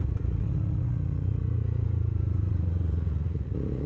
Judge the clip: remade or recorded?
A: remade